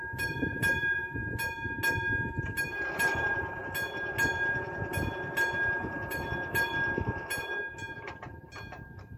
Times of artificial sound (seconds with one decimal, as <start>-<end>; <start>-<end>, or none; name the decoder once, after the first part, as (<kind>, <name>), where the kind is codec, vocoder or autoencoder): 0.0-1.2 (vocoder, BigVGAN v2); 2.6-3.6; 5.9-6.7; 8.3-9.2

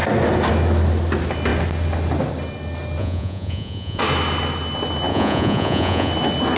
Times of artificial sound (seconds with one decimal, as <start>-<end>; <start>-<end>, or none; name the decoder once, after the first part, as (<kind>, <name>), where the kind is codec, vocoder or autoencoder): 3.0-4.0 (vocoder, Vocos); 5.1-6.1

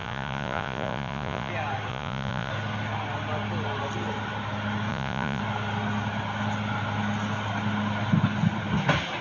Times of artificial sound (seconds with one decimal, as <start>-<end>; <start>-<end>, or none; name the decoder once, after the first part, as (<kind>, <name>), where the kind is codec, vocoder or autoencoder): 0.0-1.5 (vocoder, Vocos); 1.9-2.5; 4.9-5.4

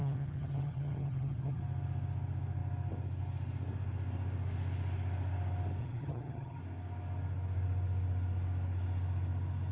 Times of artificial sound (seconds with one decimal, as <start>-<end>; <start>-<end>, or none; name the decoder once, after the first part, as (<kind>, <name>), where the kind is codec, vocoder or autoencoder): 0.0-1.6 (vocoder, HiFi-GAN); 5.8-6.6

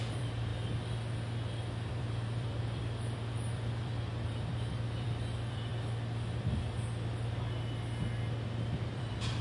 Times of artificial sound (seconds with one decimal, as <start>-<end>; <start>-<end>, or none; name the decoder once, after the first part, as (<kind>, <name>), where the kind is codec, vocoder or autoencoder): 0.0-0.5 (vocoder, BigVGAN v2); 1.9-5.7; 9.0-9.4

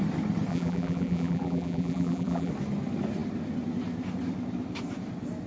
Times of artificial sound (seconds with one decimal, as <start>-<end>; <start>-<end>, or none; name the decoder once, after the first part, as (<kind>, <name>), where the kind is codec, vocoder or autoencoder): 0.5-2.5 (vocoder, BigVGAN v2)